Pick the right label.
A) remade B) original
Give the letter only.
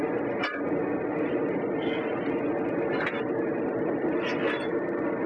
B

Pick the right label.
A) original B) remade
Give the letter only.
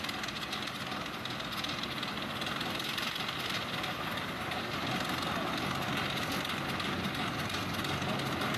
A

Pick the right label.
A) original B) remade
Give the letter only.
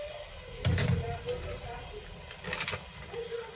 A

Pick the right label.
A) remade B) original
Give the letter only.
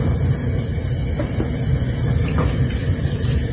B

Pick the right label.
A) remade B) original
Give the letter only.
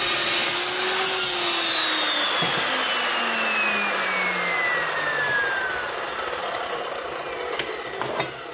B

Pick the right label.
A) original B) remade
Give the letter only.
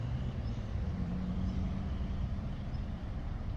B